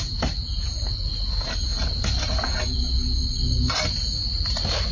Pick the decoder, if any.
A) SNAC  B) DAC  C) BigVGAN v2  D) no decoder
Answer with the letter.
D